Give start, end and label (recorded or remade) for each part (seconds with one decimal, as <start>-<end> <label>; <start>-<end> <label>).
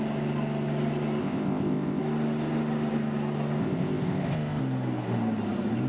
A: 0.0-1.2 recorded; 1.2-2.0 remade; 2.0-3.6 recorded; 3.6-4.6 remade; 4.6-5.9 recorded